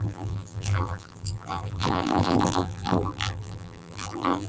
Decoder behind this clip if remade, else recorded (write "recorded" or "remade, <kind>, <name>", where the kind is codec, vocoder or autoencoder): remade, vocoder, BigVGAN v2